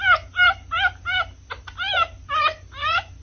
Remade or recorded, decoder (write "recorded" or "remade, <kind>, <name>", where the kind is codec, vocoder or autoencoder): remade, vocoder, BigVGAN v2